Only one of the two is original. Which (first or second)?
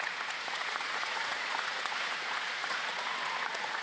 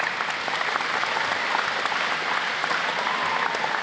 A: second